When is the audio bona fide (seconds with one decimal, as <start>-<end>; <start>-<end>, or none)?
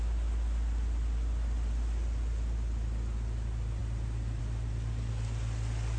0.0-6.0